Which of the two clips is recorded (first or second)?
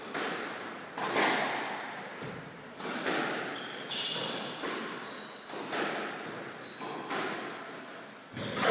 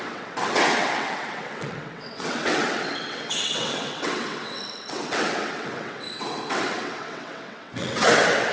first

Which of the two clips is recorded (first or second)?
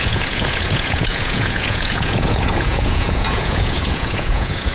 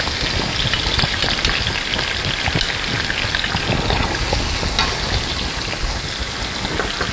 second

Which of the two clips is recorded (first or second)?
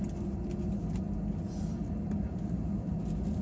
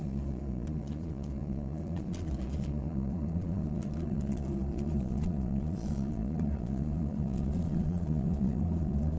first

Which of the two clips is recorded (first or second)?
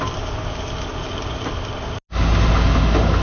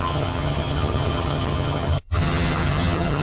first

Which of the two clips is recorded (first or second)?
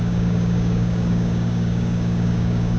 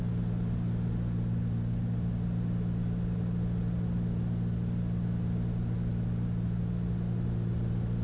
second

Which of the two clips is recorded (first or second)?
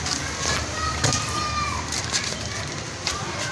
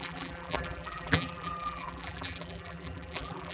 first